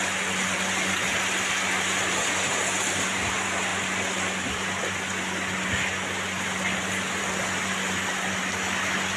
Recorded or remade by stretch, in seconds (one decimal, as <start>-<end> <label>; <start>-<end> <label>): 0.0-9.2 recorded

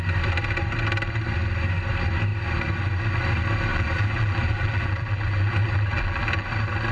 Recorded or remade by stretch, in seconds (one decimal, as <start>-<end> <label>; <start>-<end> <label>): 0.0-3.7 recorded; 3.7-6.5 remade; 6.5-6.9 recorded

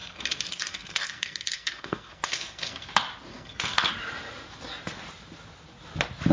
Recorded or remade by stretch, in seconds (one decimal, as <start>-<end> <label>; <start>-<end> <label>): 0.0-2.9 remade; 2.9-3.3 recorded; 3.3-3.9 remade; 3.9-6.3 recorded

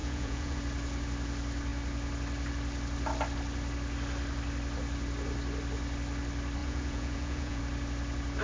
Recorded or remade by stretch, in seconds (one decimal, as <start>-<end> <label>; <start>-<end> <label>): 0.0-0.6 remade; 0.6-6.6 recorded; 6.6-7.6 remade; 7.6-8.4 recorded

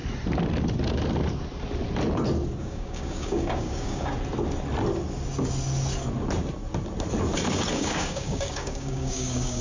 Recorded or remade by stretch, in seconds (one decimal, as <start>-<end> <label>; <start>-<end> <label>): 0.0-2.6 recorded; 2.6-4.1 remade; 4.1-7.7 recorded; 7.7-9.6 remade